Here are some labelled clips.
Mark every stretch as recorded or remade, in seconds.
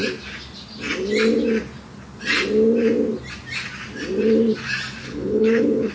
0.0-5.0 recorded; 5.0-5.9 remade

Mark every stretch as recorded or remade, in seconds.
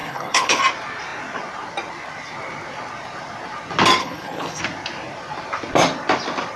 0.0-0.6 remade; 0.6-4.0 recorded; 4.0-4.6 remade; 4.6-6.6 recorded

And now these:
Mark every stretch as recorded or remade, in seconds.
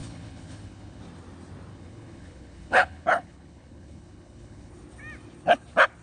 0.0-1.0 remade; 1.0-1.7 recorded; 1.7-4.7 remade; 4.7-6.0 recorded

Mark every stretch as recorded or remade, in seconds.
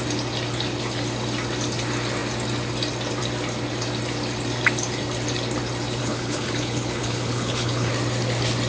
0.0-6.0 recorded; 6.0-7.9 remade; 7.9-8.7 recorded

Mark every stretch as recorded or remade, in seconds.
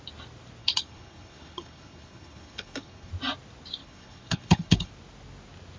0.0-0.6 recorded; 0.6-3.1 remade; 3.1-3.8 recorded; 3.8-4.9 remade; 4.9-5.8 recorded